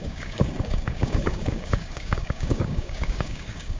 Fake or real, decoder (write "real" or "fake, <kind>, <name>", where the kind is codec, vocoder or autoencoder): fake, codec, DAC